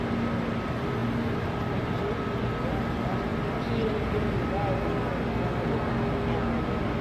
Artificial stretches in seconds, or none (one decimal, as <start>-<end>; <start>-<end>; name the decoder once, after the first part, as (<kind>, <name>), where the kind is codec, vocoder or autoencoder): none

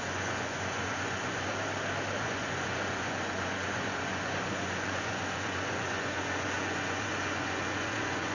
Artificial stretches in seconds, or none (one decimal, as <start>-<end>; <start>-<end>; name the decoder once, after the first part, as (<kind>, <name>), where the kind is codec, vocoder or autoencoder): 0.0-1.5 (vocoder, Vocos); 2.2-8.3